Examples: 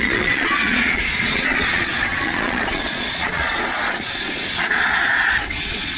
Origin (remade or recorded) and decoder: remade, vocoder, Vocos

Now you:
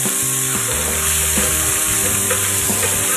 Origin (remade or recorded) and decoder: remade, vocoder, BigVGAN v2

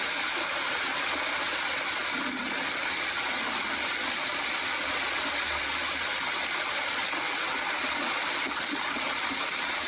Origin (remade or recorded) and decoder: recorded